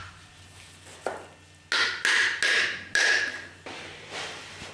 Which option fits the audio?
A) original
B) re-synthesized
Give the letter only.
A